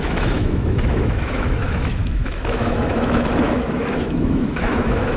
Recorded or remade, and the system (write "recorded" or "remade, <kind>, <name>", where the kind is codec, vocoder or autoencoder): remade, autoencoder, DAC-VAE